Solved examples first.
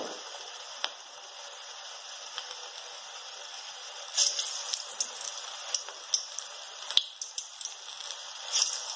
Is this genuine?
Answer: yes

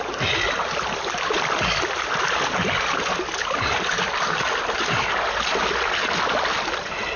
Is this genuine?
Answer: yes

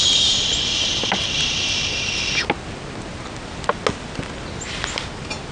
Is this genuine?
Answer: yes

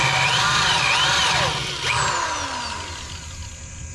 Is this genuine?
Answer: yes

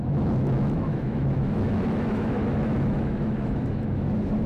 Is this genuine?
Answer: no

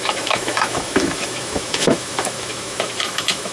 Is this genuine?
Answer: no